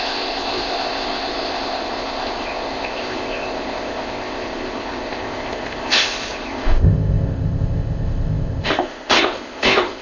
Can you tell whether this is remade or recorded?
remade